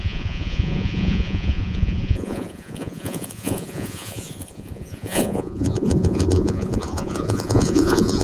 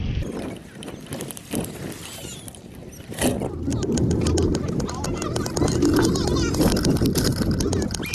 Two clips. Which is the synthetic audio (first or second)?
first